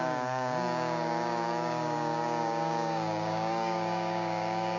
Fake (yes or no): yes